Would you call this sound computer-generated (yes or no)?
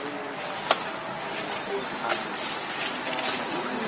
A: no